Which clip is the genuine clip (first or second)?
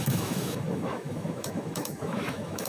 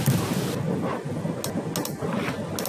second